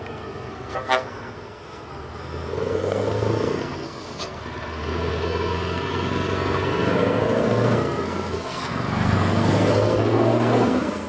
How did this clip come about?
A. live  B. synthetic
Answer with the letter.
B